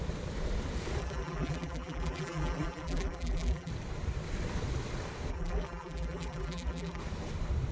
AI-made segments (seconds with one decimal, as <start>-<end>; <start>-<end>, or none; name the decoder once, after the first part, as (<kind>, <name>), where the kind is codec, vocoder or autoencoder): 1.0-3.7 (vocoder, BigVGAN v2); 5.3-7.0